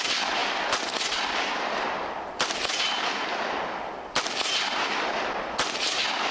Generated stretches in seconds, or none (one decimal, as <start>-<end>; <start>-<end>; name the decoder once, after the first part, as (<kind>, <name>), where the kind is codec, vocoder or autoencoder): none